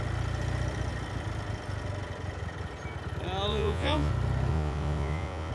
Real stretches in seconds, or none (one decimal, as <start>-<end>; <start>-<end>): 0.0-3.5; 4.1-4.5